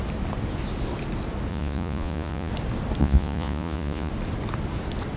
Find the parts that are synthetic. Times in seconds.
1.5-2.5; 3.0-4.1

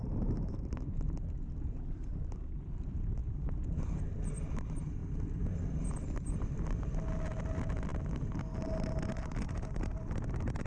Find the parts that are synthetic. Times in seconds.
none

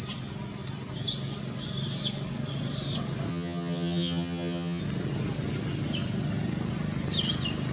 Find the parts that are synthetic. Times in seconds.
3.3-4.8

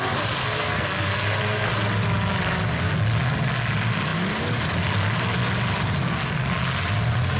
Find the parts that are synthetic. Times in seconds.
0.4-1.7